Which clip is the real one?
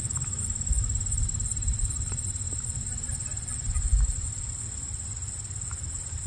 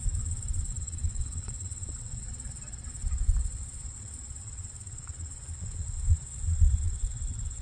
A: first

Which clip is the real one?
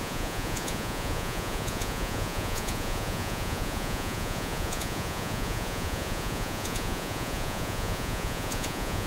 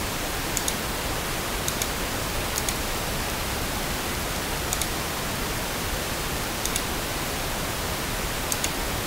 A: second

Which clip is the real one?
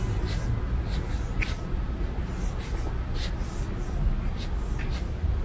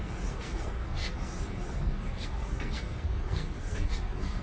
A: first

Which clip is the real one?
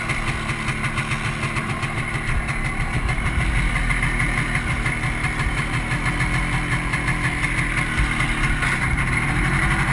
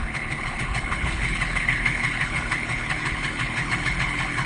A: first